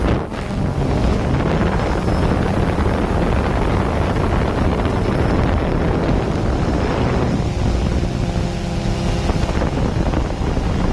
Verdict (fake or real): real